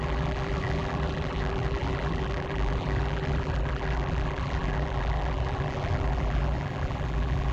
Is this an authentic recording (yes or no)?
no